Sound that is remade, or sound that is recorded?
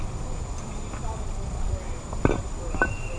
recorded